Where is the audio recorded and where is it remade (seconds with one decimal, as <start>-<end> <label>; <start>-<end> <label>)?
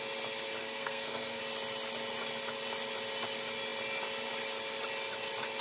0.0-0.6 recorded; 0.6-1.4 remade; 1.4-5.6 recorded